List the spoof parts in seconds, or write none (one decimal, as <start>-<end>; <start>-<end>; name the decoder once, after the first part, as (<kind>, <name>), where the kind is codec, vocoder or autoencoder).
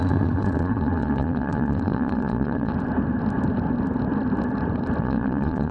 0.0-2.7 (vocoder, Vocos); 5.0-5.7